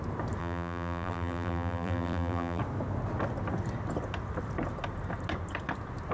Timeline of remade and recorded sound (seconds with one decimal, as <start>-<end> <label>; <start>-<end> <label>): 0.0-0.4 recorded; 0.4-2.6 remade; 2.6-6.1 recorded